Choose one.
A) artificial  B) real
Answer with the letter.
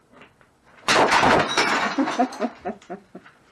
A